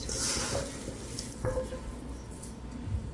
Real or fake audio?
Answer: real